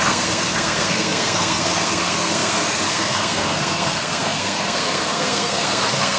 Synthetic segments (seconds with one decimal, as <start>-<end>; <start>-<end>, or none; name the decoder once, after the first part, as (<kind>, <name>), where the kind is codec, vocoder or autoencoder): 0.0-6.2 (codec, SNAC)